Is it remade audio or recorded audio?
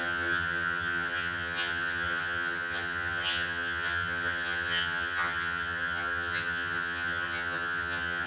remade